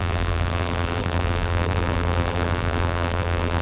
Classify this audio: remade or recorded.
remade